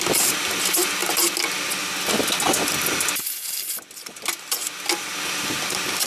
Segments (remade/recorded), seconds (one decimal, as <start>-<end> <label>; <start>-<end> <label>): 0.0-6.1 recorded